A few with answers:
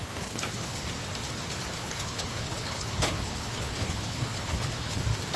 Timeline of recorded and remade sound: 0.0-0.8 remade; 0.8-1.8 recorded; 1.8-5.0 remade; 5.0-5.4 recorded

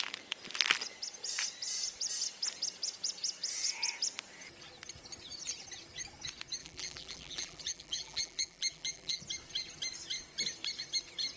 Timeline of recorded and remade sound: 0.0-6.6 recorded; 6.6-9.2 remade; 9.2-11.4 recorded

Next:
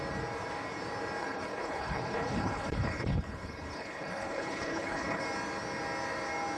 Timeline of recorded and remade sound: 0.0-1.2 recorded; 1.2-5.2 remade; 5.2-6.6 recorded

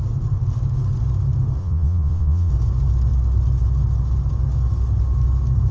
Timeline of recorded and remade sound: 0.0-1.6 recorded; 1.6-2.5 remade; 2.5-5.7 recorded

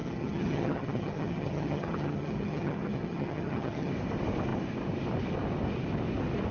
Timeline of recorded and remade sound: 0.0-3.9 remade; 3.9-6.5 recorded

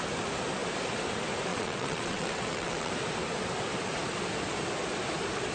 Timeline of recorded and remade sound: 0.0-1.5 recorded; 1.5-2.9 remade; 2.9-5.5 recorded

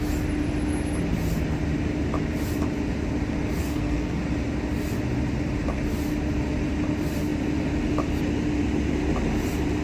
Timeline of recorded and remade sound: 0.0-3.6 recorded; 3.6-4.2 remade; 4.2-9.8 recorded

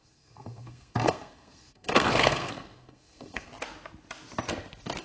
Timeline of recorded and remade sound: 0.0-3.5 remade; 3.5-5.0 recorded